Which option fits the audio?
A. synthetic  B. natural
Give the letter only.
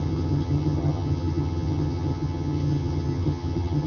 A